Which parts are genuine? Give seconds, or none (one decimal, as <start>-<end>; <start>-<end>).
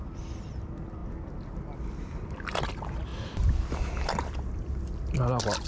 0.0-3.1; 4.7-5.7